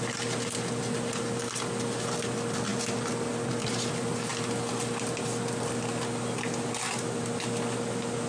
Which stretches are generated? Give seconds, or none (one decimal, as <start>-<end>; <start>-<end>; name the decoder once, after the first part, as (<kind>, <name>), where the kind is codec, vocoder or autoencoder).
none